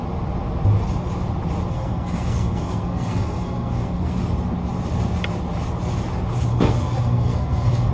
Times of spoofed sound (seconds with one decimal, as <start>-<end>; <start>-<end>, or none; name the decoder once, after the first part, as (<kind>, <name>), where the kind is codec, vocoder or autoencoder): 1.7-4.2 (codec, SNAC); 6.5-7.9